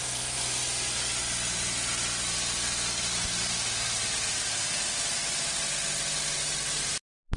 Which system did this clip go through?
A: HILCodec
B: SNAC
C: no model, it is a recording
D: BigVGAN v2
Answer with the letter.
C